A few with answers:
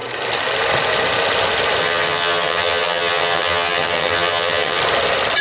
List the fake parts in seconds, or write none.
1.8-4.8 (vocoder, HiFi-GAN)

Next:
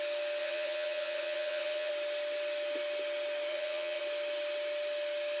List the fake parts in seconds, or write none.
0.4-1.9 (vocoder, HiFi-GAN); 3.5-4.0

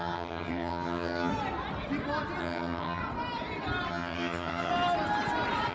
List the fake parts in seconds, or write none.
0.0-1.3 (vocoder, HiFi-GAN); 2.4-3.0; 3.9-4.7

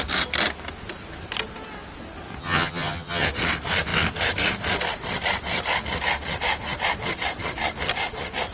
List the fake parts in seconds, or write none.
2.4-3.3 (vocoder, HiFi-GAN)

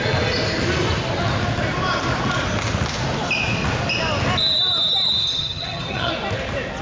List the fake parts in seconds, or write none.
5.2-6.1 (vocoder, HiFi-GAN)